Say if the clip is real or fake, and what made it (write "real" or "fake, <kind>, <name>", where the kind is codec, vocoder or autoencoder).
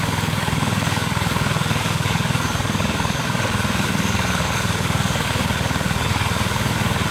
fake, codec, DAC